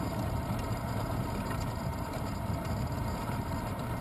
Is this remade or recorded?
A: remade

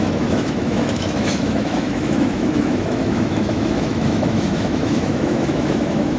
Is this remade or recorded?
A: remade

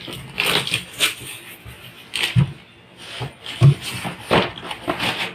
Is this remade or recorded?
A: recorded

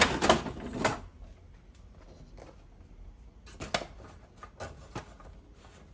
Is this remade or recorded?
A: recorded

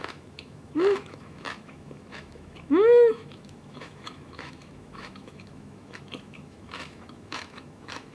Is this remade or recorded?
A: remade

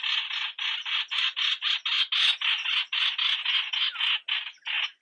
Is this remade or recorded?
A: recorded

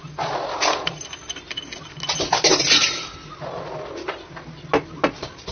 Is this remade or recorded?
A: recorded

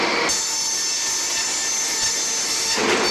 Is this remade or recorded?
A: recorded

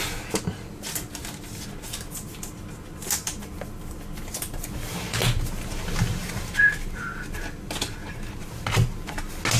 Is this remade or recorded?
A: recorded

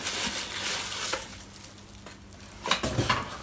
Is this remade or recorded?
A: recorded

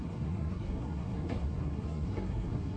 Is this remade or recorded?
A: remade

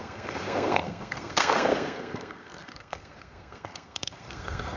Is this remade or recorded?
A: remade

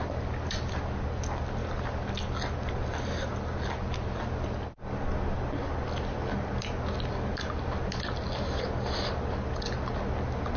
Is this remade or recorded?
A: recorded